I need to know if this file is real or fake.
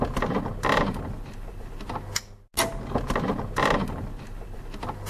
real